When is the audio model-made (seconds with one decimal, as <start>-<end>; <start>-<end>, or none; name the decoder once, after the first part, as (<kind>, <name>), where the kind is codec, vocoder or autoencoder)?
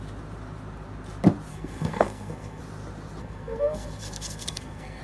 1.5-2.6 (codec, SNAC); 3.2-5.0